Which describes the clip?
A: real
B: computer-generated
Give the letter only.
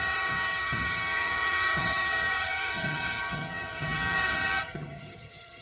B